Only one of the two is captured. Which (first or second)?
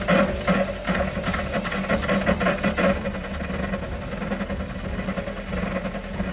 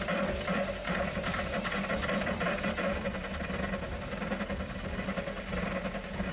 first